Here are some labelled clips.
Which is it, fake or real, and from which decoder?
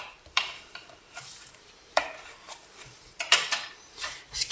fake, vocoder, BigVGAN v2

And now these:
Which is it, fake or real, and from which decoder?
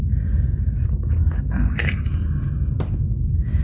real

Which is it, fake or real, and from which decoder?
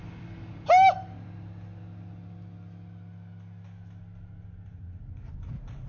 real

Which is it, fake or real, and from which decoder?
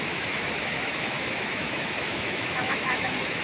fake, autoencoder, DAC-VAE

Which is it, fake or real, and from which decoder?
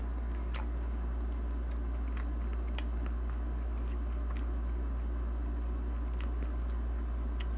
real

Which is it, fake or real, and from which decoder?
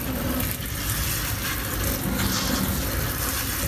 real